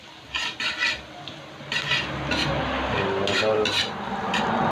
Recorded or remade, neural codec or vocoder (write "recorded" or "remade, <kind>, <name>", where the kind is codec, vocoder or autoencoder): recorded